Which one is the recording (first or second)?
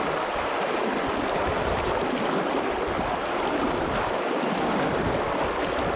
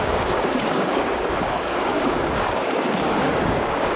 first